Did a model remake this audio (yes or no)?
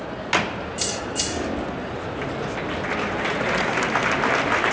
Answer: no